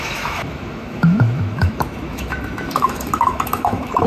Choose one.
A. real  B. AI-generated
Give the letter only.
B